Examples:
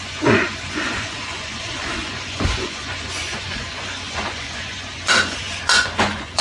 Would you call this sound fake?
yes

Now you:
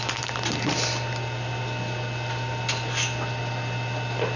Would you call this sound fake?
no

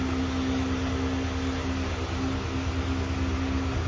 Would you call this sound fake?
no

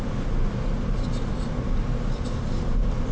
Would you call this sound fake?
no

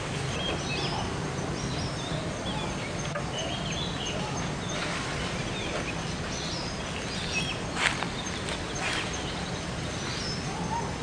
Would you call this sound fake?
no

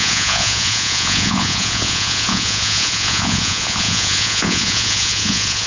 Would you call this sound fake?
yes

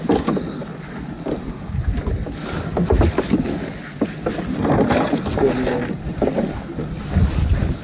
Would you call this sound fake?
no